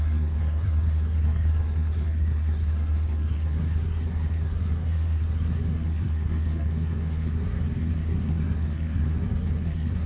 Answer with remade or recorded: remade